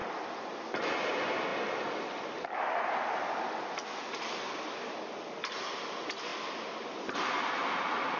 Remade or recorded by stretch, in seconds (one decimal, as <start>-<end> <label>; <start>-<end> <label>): 0.0-8.2 recorded

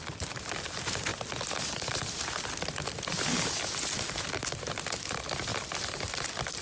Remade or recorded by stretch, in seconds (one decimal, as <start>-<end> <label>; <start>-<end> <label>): 0.0-6.6 recorded